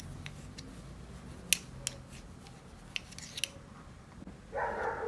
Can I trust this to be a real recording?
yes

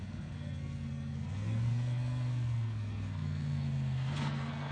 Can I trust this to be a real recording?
no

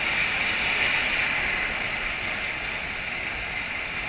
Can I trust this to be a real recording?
yes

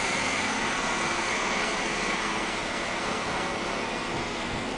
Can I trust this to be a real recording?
no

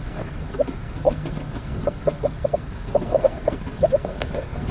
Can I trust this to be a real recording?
no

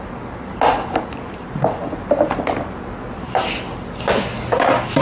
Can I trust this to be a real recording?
yes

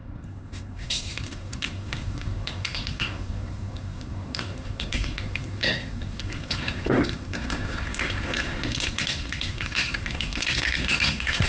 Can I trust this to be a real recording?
no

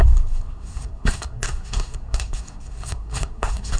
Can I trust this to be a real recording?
no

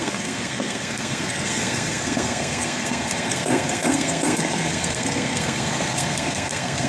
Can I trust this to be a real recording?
no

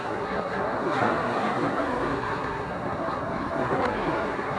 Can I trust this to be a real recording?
no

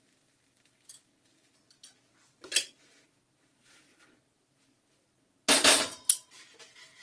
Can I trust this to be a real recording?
yes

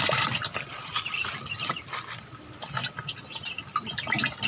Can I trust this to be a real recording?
yes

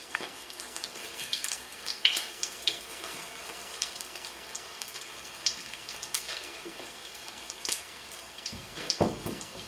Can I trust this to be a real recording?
no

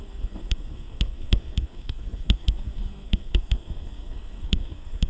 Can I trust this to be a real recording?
no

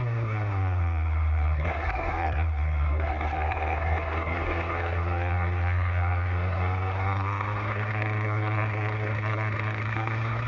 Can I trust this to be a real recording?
no